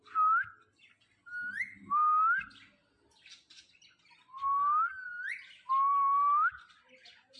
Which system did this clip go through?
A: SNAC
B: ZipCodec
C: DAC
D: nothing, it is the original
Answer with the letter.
D